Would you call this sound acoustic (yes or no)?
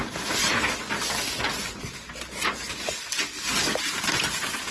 yes